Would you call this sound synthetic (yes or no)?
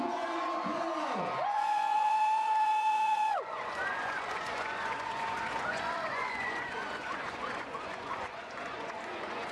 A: yes